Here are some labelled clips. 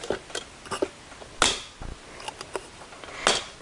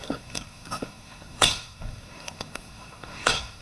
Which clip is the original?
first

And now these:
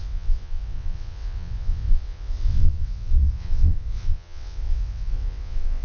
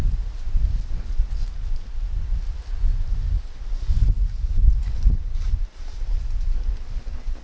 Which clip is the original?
second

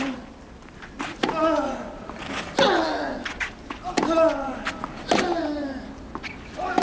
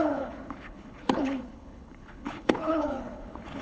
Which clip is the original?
first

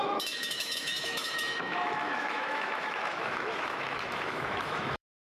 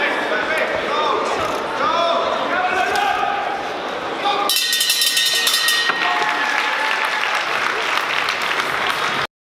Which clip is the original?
second